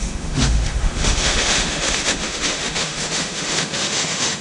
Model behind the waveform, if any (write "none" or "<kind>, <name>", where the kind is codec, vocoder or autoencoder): autoencoder, DAC-VAE